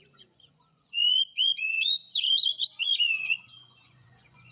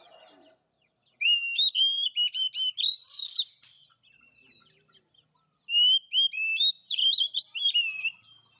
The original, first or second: second